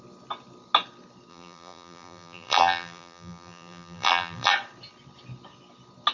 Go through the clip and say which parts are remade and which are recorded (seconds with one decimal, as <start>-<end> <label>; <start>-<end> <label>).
0.0-1.3 recorded; 1.3-4.5 remade; 4.5-6.1 recorded